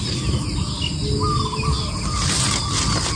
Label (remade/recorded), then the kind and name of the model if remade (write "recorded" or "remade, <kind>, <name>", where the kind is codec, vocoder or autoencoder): recorded